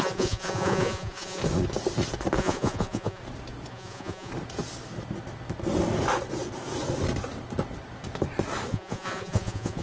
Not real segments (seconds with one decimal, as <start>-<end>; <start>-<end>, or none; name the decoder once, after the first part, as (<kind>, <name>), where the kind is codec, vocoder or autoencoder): 0.0-1.4 (vocoder, Vocos); 2.4-3.2; 3.7-4.3; 8.7-9.8